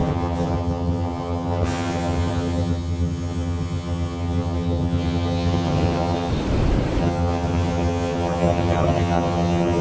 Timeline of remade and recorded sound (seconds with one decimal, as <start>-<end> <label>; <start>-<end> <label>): 0.0-6.3 remade; 6.3-7.0 recorded; 7.0-9.8 remade

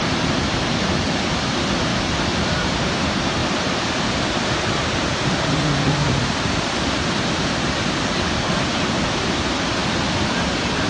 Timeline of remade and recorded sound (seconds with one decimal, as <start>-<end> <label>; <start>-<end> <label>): 0.0-10.9 remade

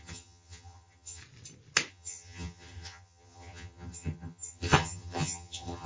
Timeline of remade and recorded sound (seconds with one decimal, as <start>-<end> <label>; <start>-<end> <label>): 0.0-1.2 remade; 1.2-1.9 recorded; 1.9-5.9 remade

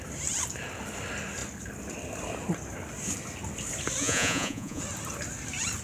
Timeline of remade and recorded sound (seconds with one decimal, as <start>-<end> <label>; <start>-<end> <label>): 0.0-4.0 recorded; 4.0-4.8 remade; 4.8-5.8 recorded

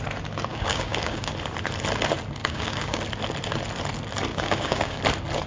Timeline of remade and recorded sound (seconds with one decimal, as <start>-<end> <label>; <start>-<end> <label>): 0.0-0.5 recorded; 0.5-1.3 remade; 1.3-2.4 recorded; 2.4-3.0 remade; 3.0-4.3 recorded; 4.3-5.0 remade; 5.0-5.5 recorded

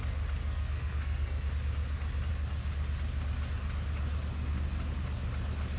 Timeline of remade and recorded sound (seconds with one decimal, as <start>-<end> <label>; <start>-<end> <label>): 0.0-0.4 recorded; 0.4-1.5 remade; 1.5-5.8 recorded